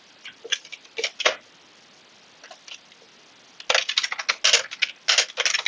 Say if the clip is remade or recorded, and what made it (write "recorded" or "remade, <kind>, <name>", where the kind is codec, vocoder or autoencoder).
recorded